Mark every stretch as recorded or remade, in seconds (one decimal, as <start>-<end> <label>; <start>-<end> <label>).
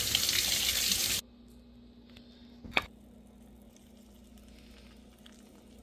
0.0-5.8 recorded